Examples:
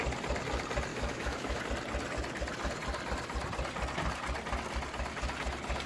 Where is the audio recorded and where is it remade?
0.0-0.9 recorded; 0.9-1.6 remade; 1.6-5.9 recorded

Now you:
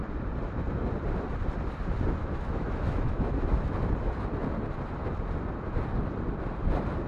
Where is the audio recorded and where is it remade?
0.0-2.2 recorded; 2.2-3.8 remade; 3.8-7.1 recorded

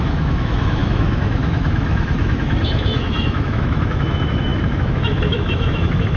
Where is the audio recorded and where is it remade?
0.0-6.2 remade

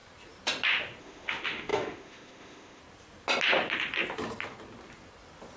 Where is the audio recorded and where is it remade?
0.0-1.0 recorded; 1.0-2.8 remade; 2.8-5.6 recorded

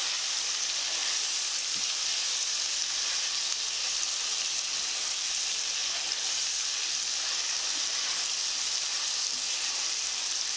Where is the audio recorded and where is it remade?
0.0-10.6 recorded

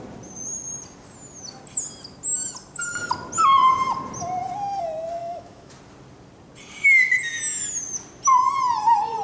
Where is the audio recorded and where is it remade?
0.0-5.2 recorded; 5.2-5.7 remade; 5.7-9.2 recorded